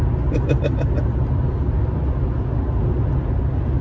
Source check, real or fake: real